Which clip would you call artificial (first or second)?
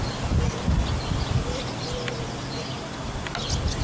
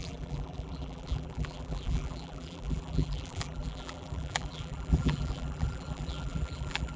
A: second